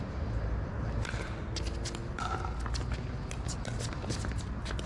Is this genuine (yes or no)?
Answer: yes